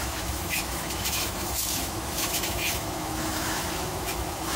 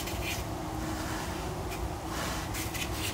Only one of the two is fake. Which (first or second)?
first